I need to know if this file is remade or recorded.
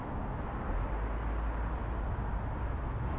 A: recorded